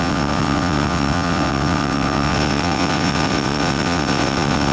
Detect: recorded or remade remade